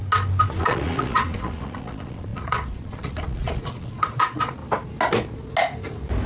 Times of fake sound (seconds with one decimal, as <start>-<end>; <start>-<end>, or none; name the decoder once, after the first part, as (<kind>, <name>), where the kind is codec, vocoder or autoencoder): 0.6-4.6 (vocoder, Vocos)